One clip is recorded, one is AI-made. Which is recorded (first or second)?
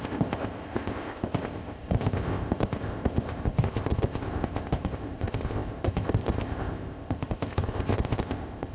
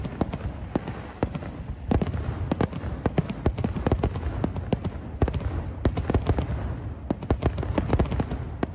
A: second